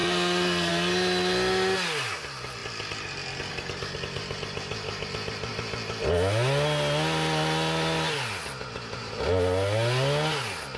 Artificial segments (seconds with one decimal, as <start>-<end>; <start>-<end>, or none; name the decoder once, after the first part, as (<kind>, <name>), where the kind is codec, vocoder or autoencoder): 0.0-0.7 (codec, SNAC)